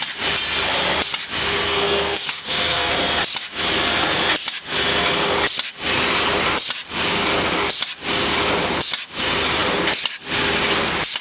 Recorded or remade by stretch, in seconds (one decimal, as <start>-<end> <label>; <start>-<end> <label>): 0.0-1.6 recorded; 1.6-2.9 remade; 2.9-11.2 recorded